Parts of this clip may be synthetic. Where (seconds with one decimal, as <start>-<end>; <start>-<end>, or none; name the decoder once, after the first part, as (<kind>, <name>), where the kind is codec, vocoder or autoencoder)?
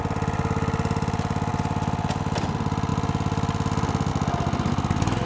none